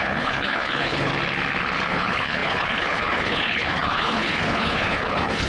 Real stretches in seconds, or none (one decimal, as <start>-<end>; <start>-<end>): 1.1-1.9